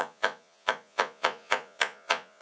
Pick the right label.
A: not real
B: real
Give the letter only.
A